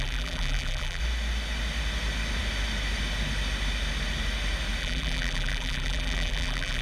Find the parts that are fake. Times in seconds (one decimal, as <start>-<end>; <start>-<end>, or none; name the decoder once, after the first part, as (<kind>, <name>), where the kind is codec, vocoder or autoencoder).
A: 0.0-1.0 (vocoder, BigVGAN v2); 4.8-6.8